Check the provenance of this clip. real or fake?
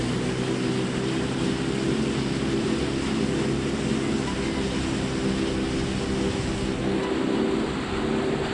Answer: real